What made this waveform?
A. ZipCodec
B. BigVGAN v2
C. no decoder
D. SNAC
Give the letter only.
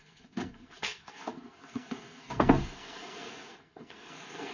D